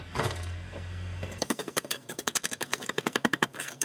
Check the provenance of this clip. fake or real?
fake